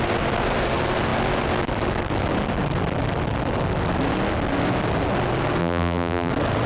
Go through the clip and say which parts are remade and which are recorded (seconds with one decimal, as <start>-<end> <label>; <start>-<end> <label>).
0.0-5.6 recorded; 5.6-6.3 remade; 6.3-6.7 recorded